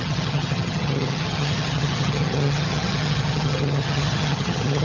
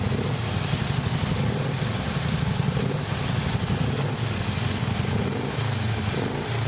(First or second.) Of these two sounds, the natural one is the second